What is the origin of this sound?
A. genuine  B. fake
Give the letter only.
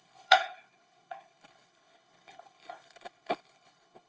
B